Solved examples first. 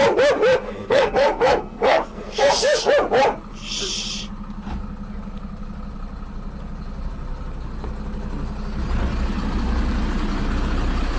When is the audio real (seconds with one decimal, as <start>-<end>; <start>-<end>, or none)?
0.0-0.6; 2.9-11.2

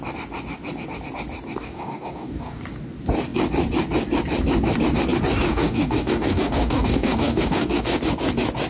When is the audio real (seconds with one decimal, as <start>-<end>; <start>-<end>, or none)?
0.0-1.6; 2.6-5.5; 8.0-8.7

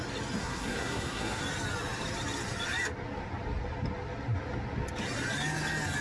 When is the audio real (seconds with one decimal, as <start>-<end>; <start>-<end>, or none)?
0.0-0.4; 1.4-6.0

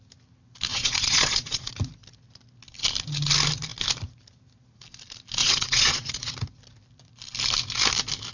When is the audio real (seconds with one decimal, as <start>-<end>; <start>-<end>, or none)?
0.0-0.7; 1.7-5.4; 6.3-8.3

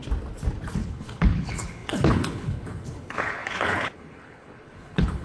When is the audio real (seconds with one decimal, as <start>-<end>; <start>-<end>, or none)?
0.0-0.7